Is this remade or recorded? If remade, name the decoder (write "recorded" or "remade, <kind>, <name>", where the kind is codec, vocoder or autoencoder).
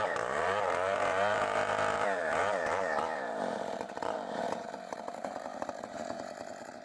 remade, vocoder, BigVGAN v2